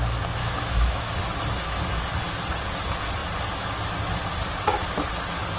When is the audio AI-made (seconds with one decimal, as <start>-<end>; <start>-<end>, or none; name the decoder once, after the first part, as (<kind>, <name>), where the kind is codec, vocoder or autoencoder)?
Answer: 0.4-1.2 (autoencoder, DAC-VAE)